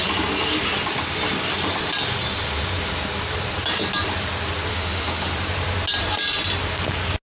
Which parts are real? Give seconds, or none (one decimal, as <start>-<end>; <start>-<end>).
0.0-4.7; 5.3-7.2